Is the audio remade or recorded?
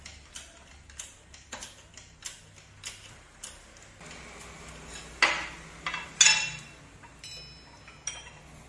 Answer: recorded